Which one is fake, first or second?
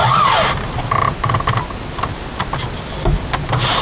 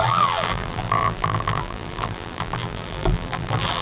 second